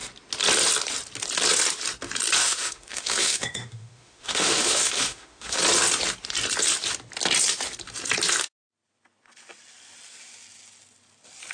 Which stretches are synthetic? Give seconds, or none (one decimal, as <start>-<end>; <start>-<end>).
2.4-5.6